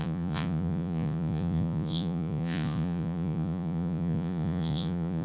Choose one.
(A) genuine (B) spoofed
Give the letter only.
B